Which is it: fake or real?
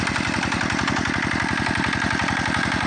real